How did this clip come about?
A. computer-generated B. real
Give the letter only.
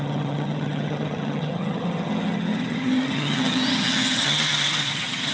A